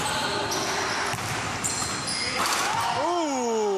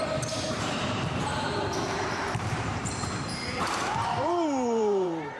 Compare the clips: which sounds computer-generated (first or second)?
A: second